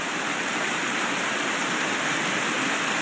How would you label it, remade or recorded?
recorded